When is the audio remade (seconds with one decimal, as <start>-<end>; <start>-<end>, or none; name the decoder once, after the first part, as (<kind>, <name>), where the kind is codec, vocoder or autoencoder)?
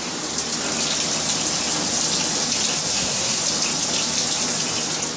2.9-3.4 (codec, SNAC)